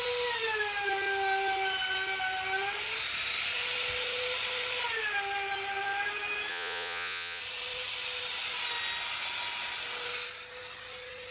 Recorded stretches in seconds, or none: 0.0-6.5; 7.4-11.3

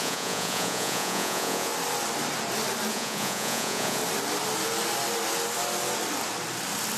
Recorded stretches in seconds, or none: 1.7-2.9; 4.0-7.0

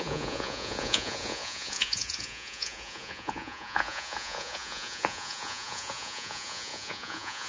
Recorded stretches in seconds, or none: none

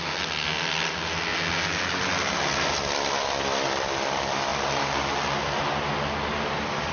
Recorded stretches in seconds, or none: 0.0-6.9

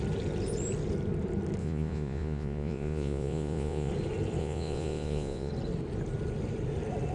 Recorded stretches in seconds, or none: 0.0-1.6; 3.9-4.4; 5.5-7.1

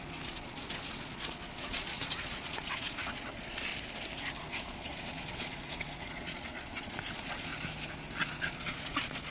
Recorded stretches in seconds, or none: 3.7-4.4; 7.5-8.2

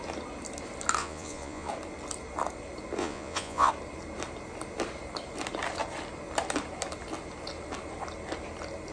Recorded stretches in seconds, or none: 0.0-1.0; 1.7-3.0; 3.7-8.9